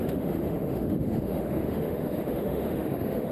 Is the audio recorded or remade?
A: remade